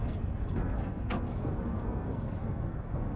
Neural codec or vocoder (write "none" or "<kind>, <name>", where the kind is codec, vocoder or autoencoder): codec, SNAC